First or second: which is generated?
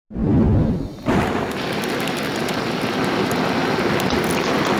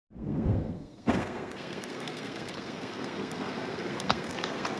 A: second